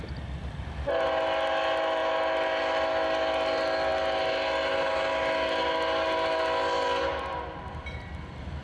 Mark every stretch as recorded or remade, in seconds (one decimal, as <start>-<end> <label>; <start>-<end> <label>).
0.0-8.6 recorded